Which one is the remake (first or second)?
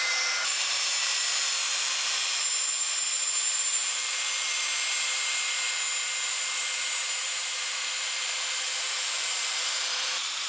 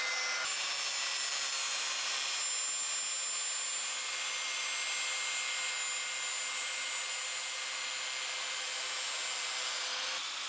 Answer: first